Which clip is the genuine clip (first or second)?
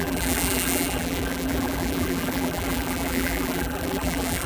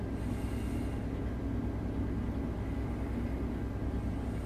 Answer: second